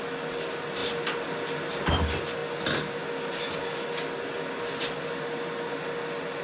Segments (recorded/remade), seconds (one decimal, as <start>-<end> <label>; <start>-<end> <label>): 0.0-6.4 recorded